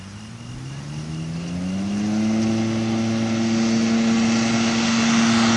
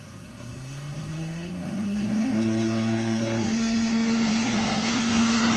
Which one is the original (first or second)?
first